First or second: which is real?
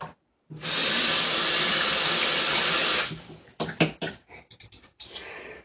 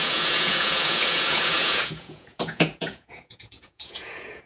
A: first